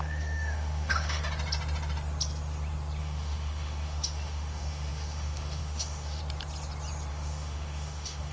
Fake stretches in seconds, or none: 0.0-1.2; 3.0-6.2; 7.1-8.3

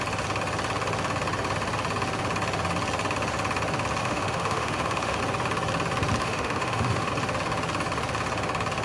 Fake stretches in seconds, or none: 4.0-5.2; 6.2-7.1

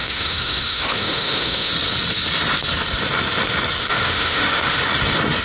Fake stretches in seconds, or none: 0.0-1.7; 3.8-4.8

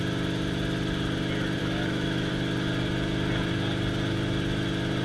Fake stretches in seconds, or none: 1.6-2.3

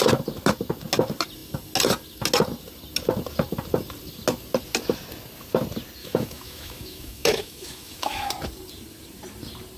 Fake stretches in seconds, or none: 6.0-8.3

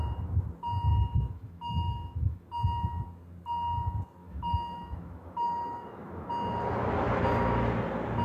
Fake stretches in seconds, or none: 0.9-2.5; 4.2-6.3